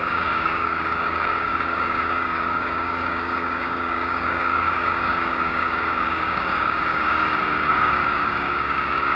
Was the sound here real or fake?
fake